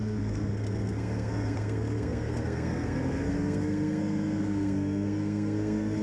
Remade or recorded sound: remade